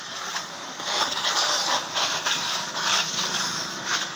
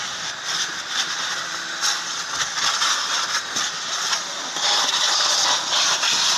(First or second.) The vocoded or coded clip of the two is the first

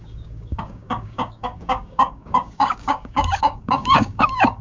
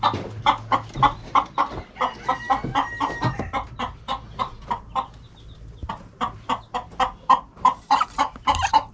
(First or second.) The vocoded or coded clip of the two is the first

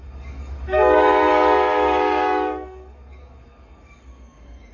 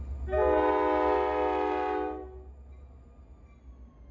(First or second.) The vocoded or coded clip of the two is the first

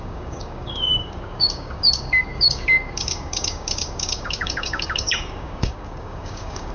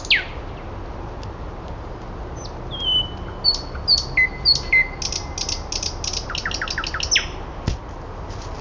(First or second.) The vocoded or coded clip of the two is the first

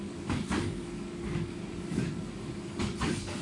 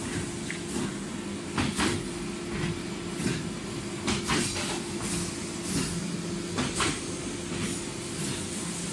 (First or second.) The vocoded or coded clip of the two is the first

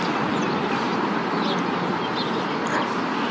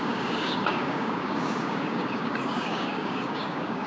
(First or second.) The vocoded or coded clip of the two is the second